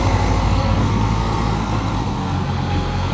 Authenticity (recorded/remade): remade